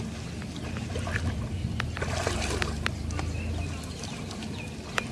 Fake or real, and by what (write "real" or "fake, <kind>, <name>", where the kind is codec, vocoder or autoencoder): real